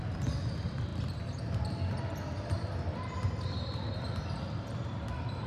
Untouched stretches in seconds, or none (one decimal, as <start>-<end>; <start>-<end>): 0.0-5.5